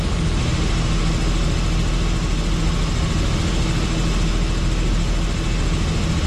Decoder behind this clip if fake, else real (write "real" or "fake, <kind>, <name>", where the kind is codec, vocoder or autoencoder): real